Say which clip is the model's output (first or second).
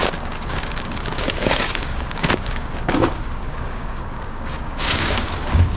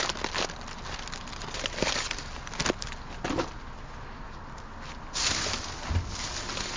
first